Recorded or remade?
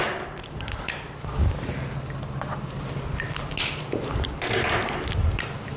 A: recorded